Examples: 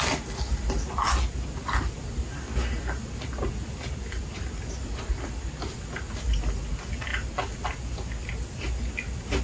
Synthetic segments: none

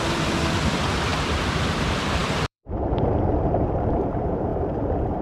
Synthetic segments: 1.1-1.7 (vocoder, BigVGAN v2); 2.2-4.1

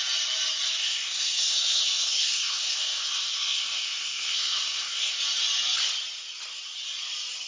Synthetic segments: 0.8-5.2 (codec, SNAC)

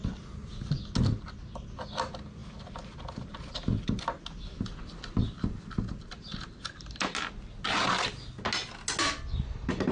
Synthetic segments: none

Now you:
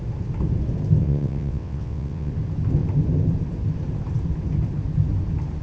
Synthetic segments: 1.0-2.3 (vocoder, WaveNeXt)

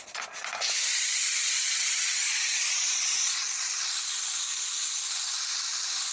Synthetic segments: 0.9-4.6 (vocoder, Vocos)

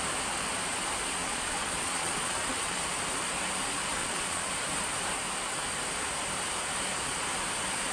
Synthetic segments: 1.2-2.8 (vocoder, Vocos); 4.0-4.5